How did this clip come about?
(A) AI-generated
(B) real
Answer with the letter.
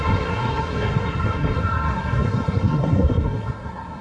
A